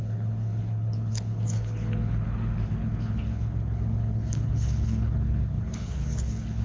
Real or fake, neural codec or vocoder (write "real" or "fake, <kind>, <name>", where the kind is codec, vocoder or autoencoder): fake, codec, HILCodec